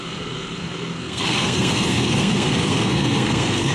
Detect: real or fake fake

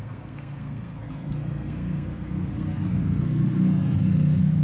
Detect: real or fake fake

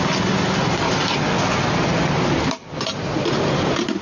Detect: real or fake real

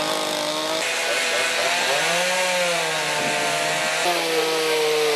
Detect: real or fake real